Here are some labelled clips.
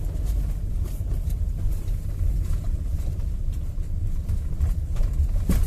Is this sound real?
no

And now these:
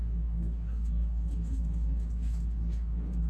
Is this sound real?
no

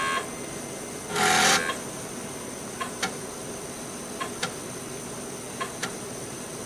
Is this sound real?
yes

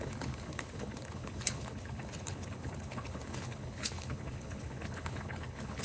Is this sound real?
no